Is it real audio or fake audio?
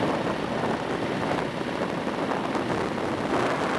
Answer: real